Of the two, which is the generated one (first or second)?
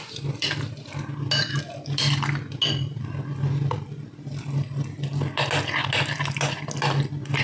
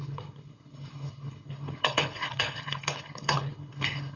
second